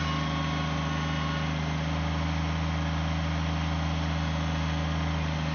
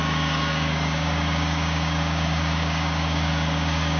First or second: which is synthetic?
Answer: second